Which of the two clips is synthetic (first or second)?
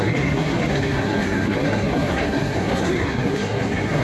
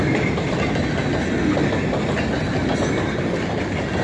first